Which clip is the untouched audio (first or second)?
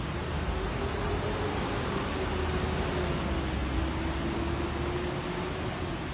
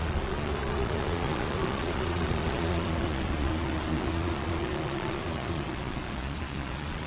first